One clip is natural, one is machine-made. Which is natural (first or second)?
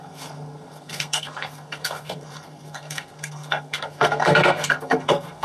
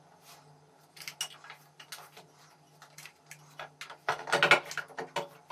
second